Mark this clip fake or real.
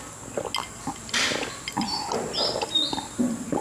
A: real